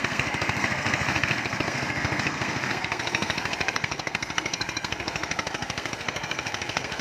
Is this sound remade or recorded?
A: remade